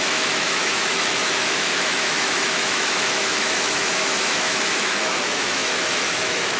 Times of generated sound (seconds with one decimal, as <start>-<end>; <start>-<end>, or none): 0.0-6.6